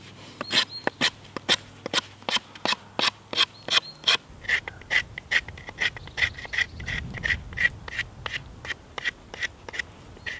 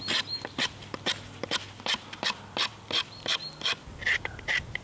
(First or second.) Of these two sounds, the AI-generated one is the second